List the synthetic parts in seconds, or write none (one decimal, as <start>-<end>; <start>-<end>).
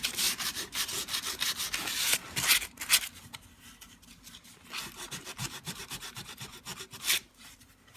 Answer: 0.0-0.9; 5.0-8.0